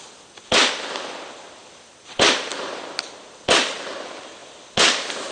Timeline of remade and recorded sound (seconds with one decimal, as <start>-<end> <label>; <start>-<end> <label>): 0.0-5.3 recorded

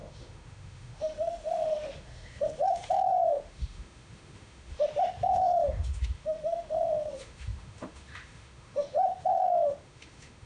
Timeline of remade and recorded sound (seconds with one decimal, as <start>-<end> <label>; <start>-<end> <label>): 0.0-10.5 remade

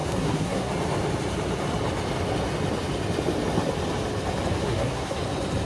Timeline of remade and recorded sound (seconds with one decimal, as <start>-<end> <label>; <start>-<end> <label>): 0.0-0.7 remade; 0.7-4.6 recorded; 4.6-5.2 remade; 5.2-5.7 recorded

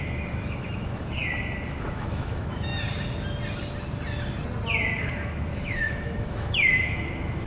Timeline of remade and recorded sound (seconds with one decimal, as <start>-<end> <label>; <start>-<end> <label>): 0.0-1.2 remade; 1.2-1.7 recorded; 1.7-2.7 remade; 2.7-5.0 recorded; 5.0-7.5 remade

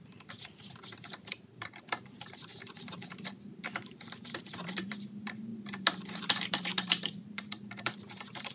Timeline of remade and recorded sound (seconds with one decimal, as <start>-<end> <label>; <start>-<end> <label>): 0.0-5.5 remade; 5.5-6.0 recorded; 6.0-8.5 remade

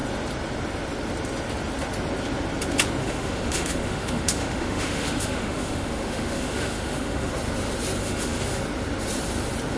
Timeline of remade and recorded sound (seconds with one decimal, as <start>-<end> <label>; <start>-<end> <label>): 0.0-3.0 recorded; 3.0-7.3 remade; 7.3-8.0 recorded; 8.0-8.6 remade; 8.6-9.8 recorded